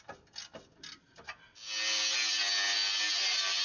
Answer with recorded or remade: recorded